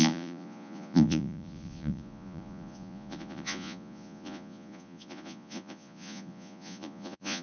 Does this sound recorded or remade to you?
remade